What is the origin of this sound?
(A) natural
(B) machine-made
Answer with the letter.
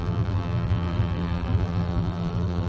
B